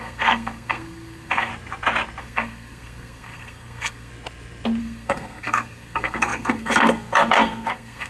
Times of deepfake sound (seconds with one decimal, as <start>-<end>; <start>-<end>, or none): 0.0-1.5; 2.2-4.1; 4.8-8.1